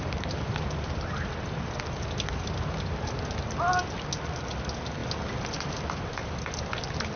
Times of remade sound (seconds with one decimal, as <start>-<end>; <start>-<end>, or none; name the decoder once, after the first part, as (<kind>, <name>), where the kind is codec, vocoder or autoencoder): none